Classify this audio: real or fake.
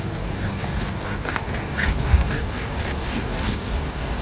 fake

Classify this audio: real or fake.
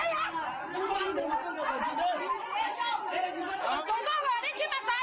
real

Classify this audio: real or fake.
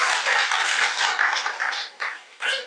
fake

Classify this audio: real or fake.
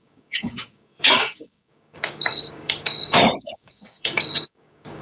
fake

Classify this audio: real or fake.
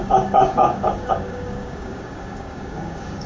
fake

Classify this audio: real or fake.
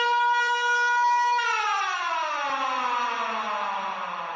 real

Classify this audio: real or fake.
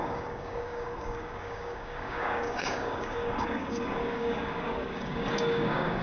fake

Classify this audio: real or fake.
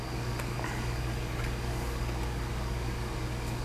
fake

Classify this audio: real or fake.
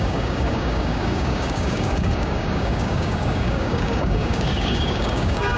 fake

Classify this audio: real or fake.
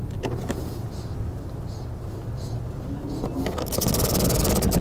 real